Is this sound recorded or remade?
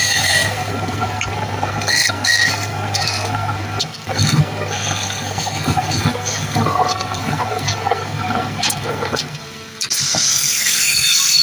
remade